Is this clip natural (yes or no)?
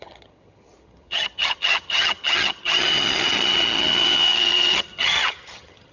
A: no